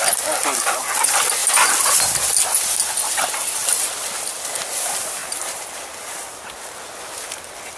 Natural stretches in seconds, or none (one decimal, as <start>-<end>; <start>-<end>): 0.0-5.2; 5.7-7.8